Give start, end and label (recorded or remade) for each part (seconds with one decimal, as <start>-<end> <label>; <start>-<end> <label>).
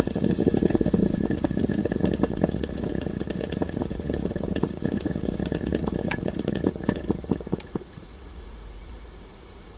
0.0-9.8 remade